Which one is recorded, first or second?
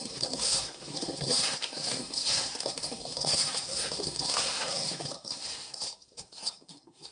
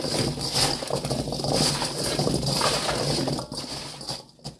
second